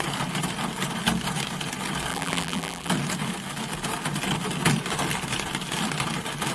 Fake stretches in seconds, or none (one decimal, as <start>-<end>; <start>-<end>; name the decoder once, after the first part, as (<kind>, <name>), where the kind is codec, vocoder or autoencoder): 2.1-2.9 (vocoder, BigVGAN v2)